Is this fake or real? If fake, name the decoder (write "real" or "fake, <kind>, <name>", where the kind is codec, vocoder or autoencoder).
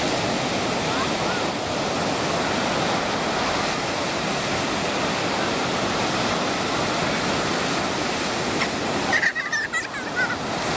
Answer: real